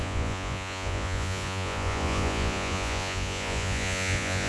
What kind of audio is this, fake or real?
fake